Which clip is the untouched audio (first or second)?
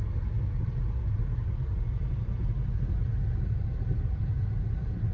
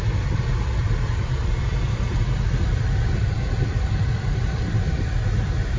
first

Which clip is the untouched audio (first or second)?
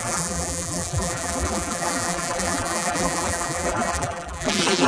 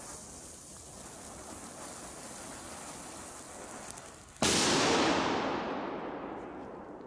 second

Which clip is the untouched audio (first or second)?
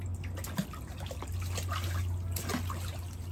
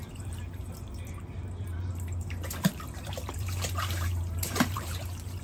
first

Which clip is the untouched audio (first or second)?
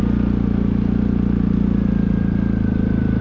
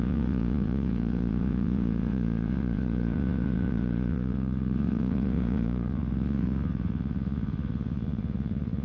first